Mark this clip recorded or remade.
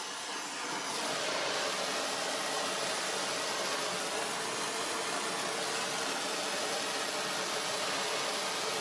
recorded